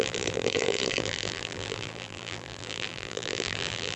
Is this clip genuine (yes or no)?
no